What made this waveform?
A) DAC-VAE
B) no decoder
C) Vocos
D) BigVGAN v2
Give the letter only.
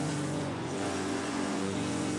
C